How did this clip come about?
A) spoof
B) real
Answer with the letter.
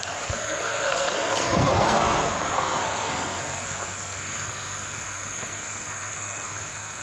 A